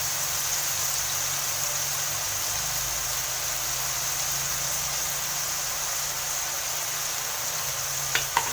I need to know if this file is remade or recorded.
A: recorded